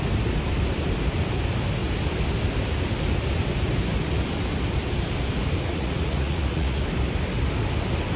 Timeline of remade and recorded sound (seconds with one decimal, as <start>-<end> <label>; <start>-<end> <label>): 0.0-5.7 recorded; 5.7-6.8 remade; 6.8-8.2 recorded